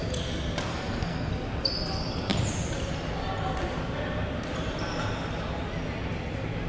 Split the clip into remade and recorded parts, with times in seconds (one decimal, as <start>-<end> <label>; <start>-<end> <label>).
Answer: 0.0-0.7 recorded; 0.7-1.3 remade; 1.3-6.7 recorded

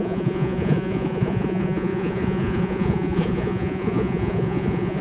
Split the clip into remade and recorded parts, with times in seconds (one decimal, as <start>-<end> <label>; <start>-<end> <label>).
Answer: 0.0-5.0 remade